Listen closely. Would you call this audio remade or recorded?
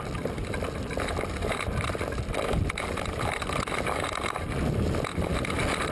remade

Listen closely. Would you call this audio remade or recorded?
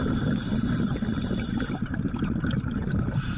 remade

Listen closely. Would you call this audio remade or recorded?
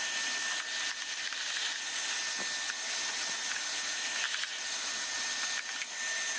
recorded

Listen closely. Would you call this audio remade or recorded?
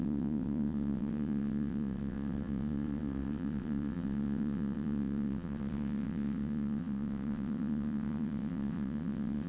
remade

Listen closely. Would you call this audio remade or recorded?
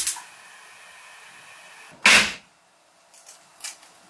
recorded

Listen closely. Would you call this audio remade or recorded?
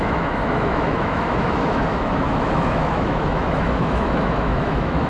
remade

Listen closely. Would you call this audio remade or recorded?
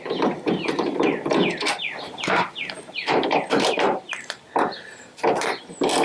remade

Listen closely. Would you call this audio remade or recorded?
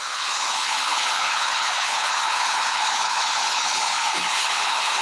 remade